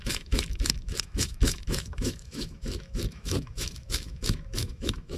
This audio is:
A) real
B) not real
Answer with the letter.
B